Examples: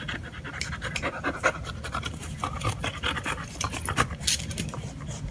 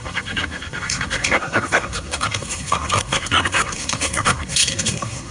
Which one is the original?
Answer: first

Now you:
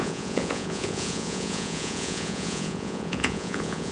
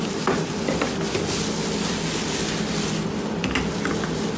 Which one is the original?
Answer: second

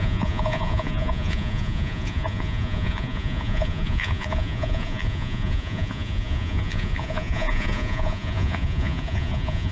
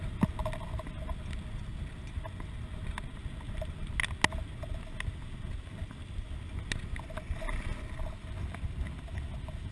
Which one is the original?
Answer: second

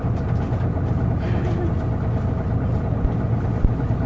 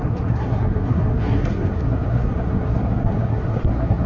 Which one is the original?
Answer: first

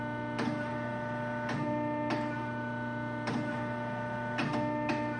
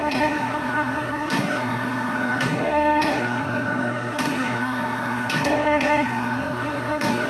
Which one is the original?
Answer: first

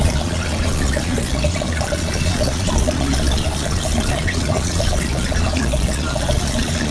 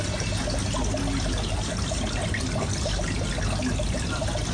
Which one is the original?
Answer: second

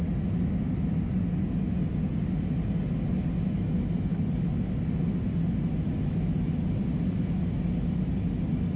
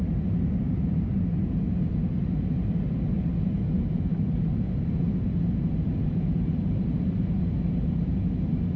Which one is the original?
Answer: first